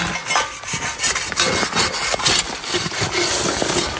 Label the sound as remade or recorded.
recorded